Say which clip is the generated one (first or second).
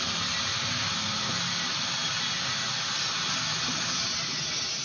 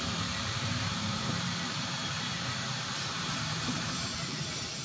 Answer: second